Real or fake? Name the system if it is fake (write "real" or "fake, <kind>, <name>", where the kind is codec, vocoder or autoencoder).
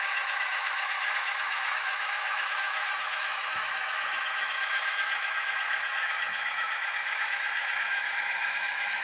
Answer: fake, autoencoder, DAC-VAE